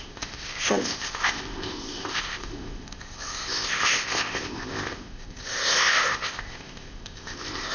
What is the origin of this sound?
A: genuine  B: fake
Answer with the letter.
B